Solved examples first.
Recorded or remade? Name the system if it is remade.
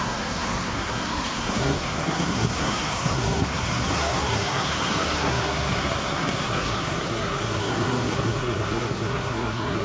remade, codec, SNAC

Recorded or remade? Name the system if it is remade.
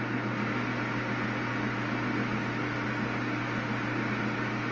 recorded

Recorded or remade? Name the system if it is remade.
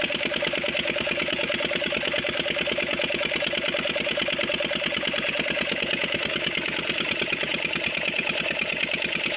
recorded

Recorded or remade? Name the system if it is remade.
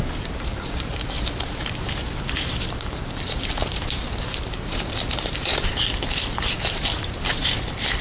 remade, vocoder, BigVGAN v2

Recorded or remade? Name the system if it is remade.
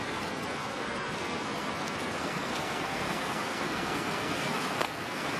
remade, codec, SNAC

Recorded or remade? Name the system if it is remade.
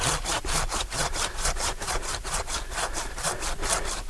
remade, vocoder, BigVGAN v2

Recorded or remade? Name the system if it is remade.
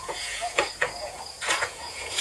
remade, vocoder, Vocos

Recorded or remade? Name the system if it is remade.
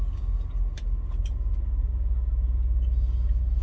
recorded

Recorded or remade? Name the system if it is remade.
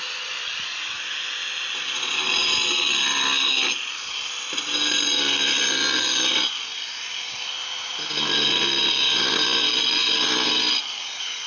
recorded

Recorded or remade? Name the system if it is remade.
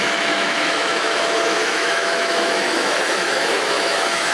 remade, autoencoder, DAC-VAE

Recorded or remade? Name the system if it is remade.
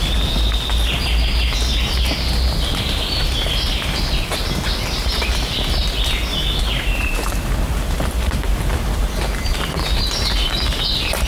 recorded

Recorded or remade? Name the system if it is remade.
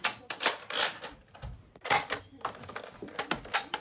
recorded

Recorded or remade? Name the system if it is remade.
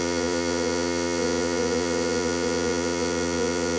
remade, vocoder, Vocos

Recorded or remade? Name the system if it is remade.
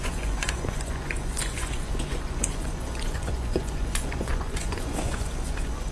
remade, vocoder, Vocos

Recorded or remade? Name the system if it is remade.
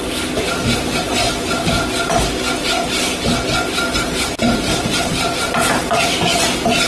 recorded